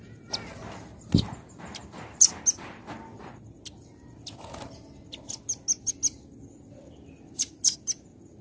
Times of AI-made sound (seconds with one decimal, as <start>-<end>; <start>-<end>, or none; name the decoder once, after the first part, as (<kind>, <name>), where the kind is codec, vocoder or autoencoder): none